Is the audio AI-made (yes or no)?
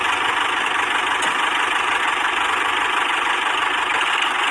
no